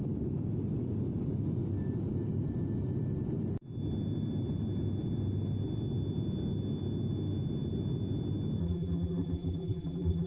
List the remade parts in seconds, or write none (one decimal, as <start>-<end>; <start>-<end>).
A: 8.6-10.3